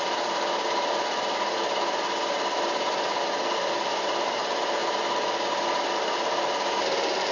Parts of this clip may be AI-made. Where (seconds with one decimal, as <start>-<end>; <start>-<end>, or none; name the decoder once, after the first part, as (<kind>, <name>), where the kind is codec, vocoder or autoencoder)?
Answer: none